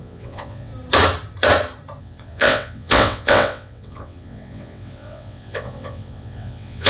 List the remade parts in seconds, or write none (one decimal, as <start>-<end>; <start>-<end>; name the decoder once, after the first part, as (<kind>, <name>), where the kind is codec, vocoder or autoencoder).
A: 0.0-0.7 (vocoder, WaveNeXt); 2.0-6.9